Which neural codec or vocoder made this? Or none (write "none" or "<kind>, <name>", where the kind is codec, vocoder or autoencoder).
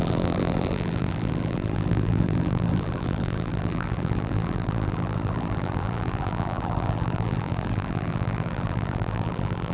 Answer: vocoder, BigVGAN v2